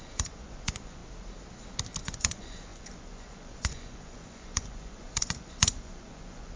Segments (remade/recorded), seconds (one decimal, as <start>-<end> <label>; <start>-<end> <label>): 0.0-1.0 remade; 1.0-2.0 recorded; 2.0-6.6 remade